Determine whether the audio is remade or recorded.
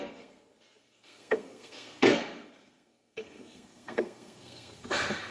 remade